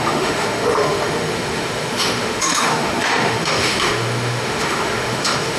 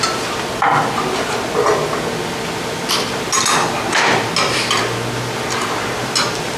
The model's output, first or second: first